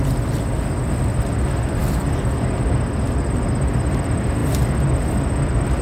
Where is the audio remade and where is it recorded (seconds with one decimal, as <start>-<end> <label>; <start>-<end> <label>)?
0.0-5.8 recorded

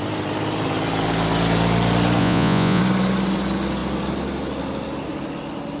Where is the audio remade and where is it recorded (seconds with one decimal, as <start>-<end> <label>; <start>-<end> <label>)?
0.0-2.2 recorded; 2.2-2.8 remade; 2.8-5.8 recorded